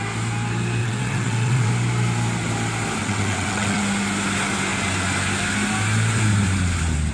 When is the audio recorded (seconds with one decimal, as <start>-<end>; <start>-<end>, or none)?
0.0-0.8; 1.7-3.0; 3.8-7.1